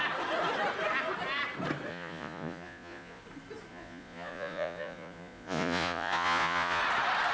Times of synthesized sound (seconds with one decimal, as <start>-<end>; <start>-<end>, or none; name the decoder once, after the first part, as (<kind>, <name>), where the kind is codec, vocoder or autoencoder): 1.9-3.2 (vocoder, Vocos); 3.7-6.8